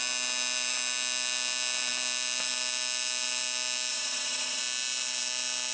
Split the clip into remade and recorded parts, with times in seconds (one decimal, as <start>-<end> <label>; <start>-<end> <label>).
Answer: 0.0-3.9 recorded; 3.9-4.6 remade; 4.6-5.7 recorded